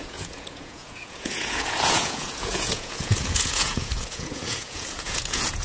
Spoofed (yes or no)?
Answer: yes